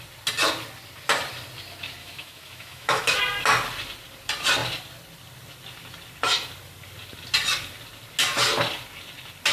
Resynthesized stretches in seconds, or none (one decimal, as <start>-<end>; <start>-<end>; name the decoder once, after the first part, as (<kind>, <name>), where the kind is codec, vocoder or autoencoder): 2.0-3.2 (autoencoder, DAC-VAE)